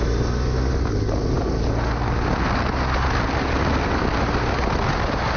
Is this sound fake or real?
real